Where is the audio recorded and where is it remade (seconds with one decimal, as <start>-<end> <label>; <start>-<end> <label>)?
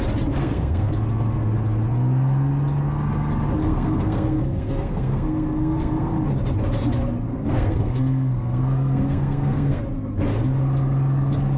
0.0-0.4 recorded; 0.4-0.9 remade; 0.9-3.6 recorded; 3.6-6.1 remade; 6.1-7.3 recorded; 7.3-9.8 remade; 9.8-11.6 recorded